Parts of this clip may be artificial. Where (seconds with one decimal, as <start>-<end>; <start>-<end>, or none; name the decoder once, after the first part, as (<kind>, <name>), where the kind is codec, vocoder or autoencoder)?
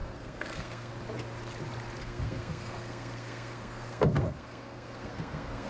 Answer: 0.0-0.9 (codec, SNAC); 2.0-5.7